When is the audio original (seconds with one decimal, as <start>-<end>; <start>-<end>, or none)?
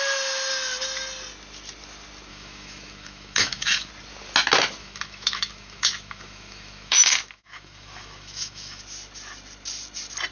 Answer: 0.0-2.3; 3.9-4.8; 8.8-10.3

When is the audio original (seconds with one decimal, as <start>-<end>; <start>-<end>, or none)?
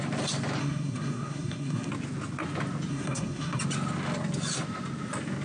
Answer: 0.0-0.6; 1.9-2.9; 3.6-5.4